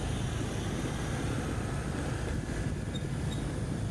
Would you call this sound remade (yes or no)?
no